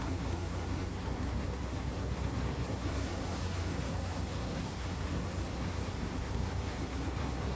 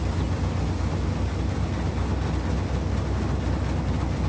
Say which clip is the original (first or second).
second